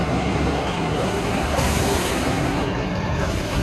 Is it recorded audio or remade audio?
remade